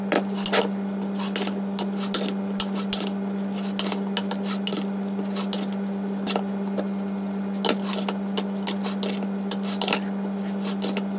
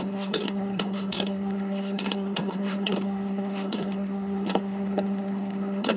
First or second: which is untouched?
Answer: first